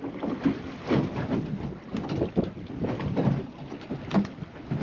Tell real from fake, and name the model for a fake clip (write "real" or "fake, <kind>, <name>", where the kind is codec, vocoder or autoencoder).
real